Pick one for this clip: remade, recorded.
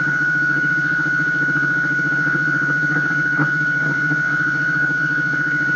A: remade